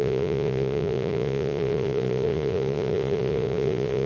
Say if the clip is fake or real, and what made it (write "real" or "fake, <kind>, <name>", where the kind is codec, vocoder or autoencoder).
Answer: fake, vocoder, Vocos